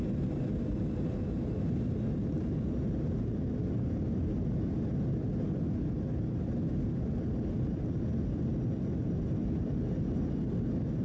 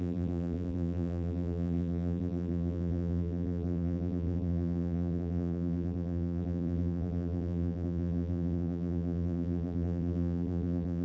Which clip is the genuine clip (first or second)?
first